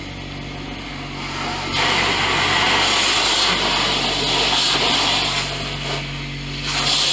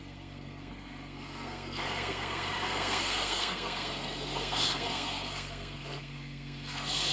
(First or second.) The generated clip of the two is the second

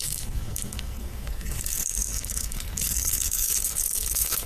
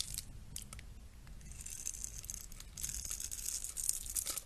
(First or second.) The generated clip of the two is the first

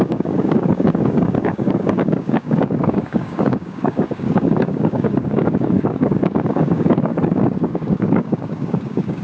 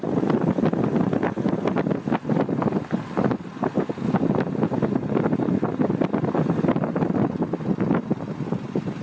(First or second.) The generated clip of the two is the first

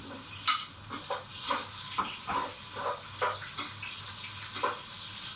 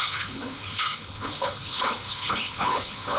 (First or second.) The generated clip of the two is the second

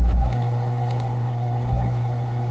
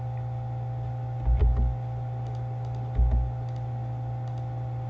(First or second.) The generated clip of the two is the first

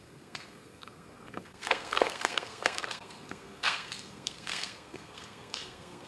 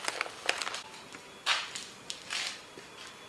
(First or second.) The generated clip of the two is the first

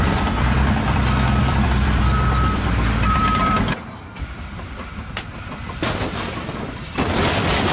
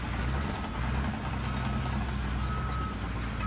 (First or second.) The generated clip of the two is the first